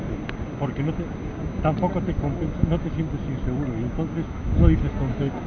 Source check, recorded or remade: recorded